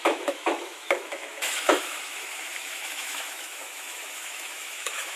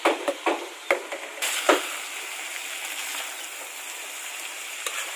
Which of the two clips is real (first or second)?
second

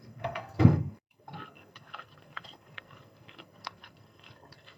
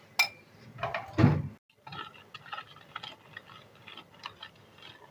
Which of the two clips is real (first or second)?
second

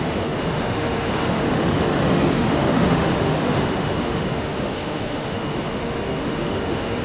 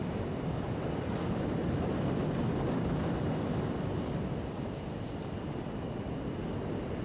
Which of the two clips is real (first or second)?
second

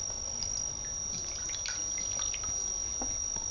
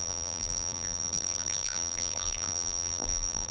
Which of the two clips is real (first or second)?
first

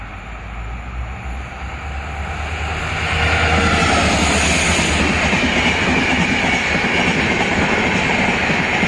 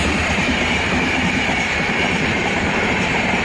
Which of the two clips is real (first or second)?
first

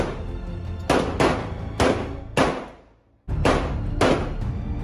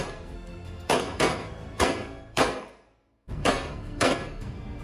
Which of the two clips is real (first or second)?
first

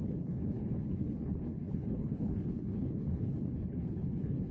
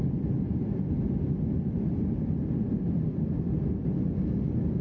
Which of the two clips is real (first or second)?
second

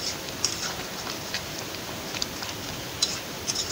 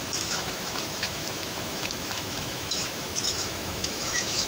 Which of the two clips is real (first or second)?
first